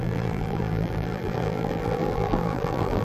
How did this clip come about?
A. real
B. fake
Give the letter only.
B